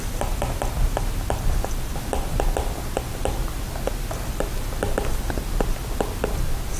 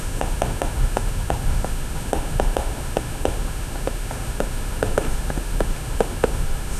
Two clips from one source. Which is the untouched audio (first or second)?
first